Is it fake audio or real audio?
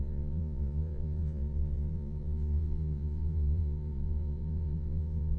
fake